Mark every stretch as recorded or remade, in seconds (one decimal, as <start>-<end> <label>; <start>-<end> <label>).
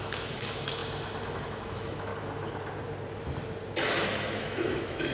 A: 0.0-2.1 remade; 2.1-4.1 recorded; 4.1-5.1 remade